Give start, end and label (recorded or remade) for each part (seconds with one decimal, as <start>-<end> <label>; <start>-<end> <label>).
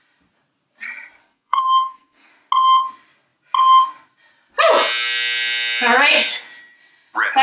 0.0-1.2 recorded; 1.2-2.3 remade; 2.3-7.4 recorded